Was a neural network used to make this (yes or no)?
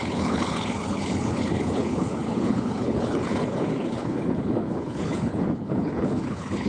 yes